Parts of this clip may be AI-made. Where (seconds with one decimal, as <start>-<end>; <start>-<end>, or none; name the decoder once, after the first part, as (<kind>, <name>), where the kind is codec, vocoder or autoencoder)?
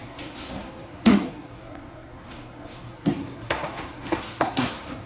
0.0-5.1 (codec, SNAC)